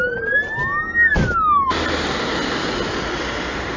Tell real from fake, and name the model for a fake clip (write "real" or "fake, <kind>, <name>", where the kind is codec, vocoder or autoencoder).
real